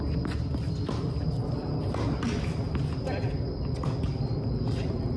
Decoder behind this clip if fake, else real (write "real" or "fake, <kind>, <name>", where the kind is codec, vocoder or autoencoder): real